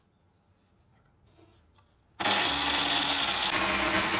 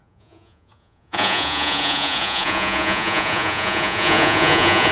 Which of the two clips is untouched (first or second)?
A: first